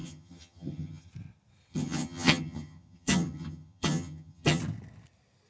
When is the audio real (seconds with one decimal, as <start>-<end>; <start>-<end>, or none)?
1.1-1.7; 4.6-5.5